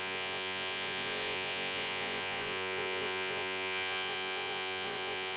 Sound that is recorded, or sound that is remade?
remade